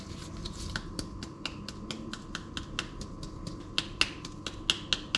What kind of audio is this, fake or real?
real